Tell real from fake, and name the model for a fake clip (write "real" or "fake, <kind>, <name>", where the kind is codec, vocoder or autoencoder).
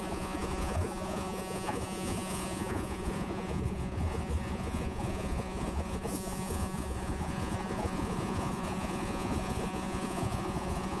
fake, vocoder, Vocos